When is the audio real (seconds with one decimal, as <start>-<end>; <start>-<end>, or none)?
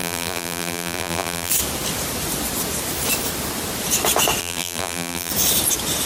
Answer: 1.5-4.4; 5.3-6.1